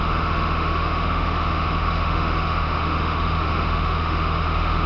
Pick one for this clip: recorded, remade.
remade